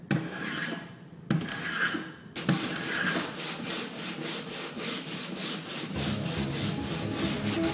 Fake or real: real